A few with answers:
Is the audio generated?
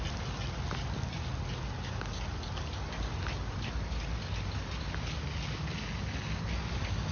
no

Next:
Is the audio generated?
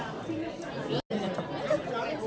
no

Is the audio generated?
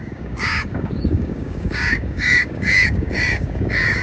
yes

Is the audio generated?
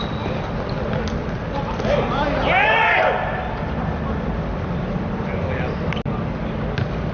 no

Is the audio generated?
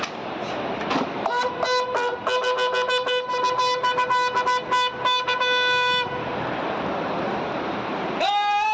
no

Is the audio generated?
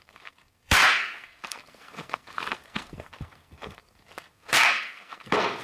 yes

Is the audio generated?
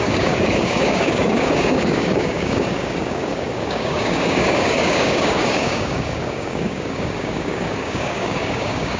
yes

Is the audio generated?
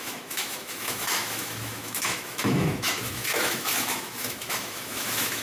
yes